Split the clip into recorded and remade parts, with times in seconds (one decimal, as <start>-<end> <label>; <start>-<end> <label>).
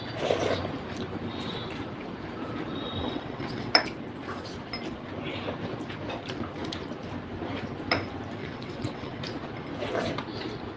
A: 0.0-3.0 recorded; 3.0-3.7 remade; 3.7-8.4 recorded; 8.4-9.2 remade; 9.2-10.8 recorded